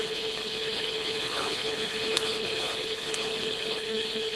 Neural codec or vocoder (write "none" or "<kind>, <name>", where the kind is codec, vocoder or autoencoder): codec, HILCodec